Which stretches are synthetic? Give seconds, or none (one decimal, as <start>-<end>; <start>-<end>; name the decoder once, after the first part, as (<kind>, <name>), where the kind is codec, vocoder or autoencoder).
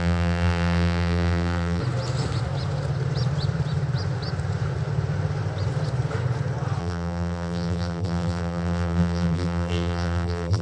0.0-1.8 (vocoder, BigVGAN v2); 6.8-10.6